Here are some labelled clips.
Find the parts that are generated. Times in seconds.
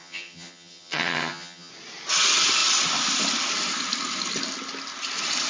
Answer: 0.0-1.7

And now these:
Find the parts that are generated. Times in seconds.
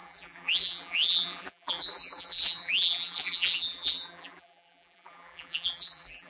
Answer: 0.0-6.3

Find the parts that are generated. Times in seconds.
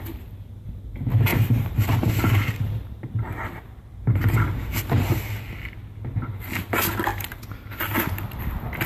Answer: 1.3-5.3; 7.1-7.7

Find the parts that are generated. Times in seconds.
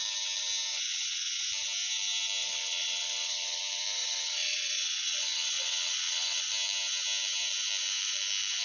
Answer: 0.7-1.4; 2.4-3.6; 4.0-6.4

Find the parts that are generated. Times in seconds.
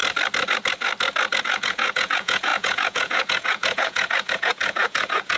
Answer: 1.4-5.4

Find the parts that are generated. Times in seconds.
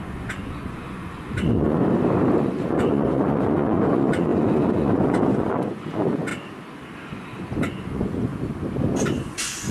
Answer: 0.0-1.8; 2.4-6.3; 7.2-8.3; 9.2-9.7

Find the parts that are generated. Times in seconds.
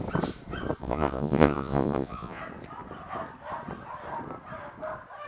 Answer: 0.8-2.4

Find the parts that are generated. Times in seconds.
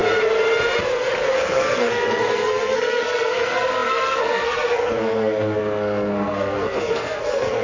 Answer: 1.3-7.6